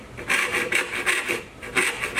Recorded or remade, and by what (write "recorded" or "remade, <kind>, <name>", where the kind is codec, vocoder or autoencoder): remade, vocoder, BigVGAN v2